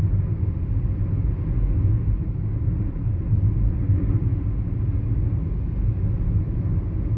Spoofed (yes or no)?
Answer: no